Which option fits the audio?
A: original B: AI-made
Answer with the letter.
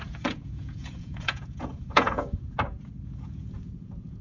B